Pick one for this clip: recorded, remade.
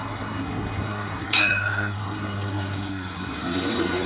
remade